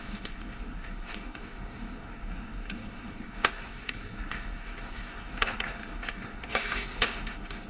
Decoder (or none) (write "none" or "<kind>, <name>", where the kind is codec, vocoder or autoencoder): codec, SNAC